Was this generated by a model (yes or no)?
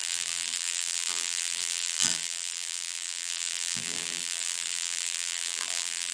yes